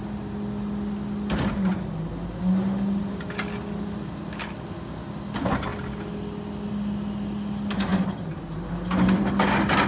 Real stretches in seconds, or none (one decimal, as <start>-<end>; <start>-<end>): 0.0-9.9